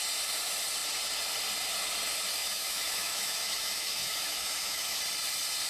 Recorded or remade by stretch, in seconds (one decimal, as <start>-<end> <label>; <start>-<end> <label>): 0.0-2.4 recorded; 2.4-5.0 remade; 5.0-5.7 recorded